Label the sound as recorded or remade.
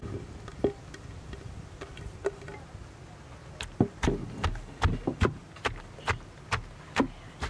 recorded